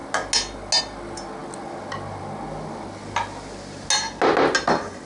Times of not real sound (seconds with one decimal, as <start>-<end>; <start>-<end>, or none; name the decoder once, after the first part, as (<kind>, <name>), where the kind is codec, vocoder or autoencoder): none